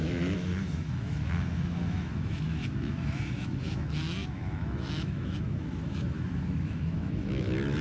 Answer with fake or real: fake